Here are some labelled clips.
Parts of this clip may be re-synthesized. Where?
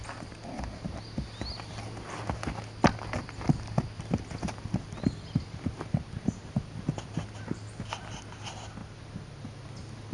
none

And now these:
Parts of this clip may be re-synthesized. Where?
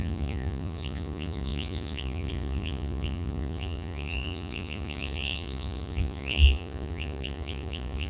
0.0-8.1 (vocoder, Vocos)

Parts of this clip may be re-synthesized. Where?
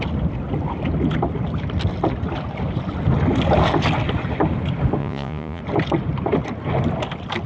5.0-5.6 (vocoder, Vocos)